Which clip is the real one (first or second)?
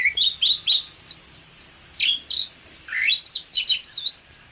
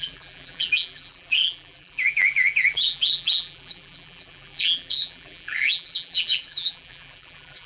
first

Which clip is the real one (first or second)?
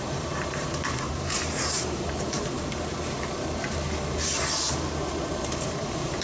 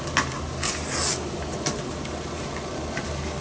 second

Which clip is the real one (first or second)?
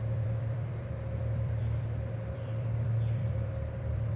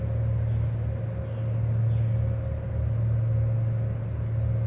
second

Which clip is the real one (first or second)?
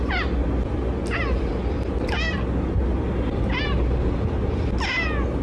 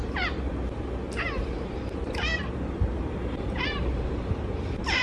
first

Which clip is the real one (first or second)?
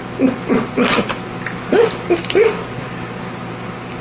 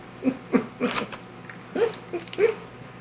first